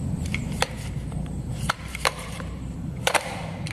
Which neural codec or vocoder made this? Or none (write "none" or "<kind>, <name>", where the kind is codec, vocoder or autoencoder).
vocoder, BigVGAN v2